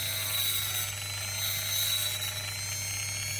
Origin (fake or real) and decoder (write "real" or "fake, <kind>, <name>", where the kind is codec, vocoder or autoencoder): real